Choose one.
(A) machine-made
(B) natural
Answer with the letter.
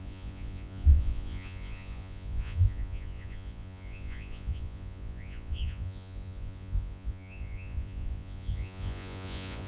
A